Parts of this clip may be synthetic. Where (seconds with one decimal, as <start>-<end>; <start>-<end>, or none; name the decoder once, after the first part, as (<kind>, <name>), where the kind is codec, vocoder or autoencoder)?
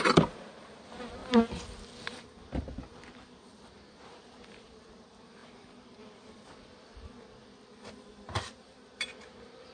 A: 0.0-1.2 (vocoder, BigVGAN v2); 3.3-5.4; 7.9-9.7